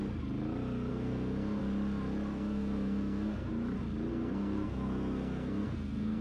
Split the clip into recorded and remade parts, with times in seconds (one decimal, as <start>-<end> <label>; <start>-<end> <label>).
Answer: 0.0-0.9 recorded; 0.9-1.6 remade; 1.6-2.3 recorded; 2.3-3.5 remade; 3.5-4.1 recorded; 4.1-6.2 remade